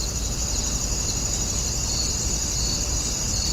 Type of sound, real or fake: fake